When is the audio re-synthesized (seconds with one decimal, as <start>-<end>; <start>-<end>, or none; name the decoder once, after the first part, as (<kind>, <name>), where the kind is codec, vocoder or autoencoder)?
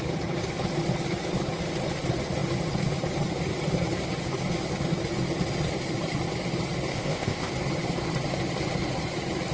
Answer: 6.9-7.5 (codec, ZipCodec)